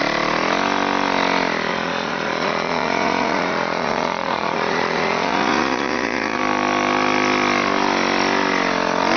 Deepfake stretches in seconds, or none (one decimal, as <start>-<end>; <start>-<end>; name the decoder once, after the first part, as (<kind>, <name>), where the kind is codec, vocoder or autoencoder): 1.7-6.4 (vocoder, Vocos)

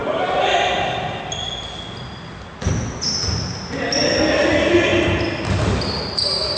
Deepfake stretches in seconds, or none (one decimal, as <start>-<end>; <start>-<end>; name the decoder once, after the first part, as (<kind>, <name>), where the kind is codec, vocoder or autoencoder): none

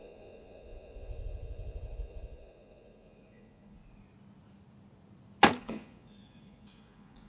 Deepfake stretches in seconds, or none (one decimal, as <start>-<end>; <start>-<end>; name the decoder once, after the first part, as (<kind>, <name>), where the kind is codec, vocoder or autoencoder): 0.0-3.8 (vocoder, Vocos); 5.6-7.3

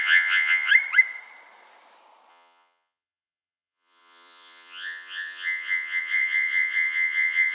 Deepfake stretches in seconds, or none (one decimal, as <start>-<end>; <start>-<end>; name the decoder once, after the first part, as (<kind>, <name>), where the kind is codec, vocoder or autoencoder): 0.0-0.7 (vocoder, Vocos); 2.3-7.5

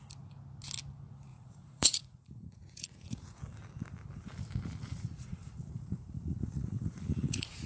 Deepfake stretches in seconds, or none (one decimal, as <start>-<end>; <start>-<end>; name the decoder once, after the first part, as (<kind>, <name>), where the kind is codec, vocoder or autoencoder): 1.3-3.4 (vocoder, Vocos); 4.9-7.7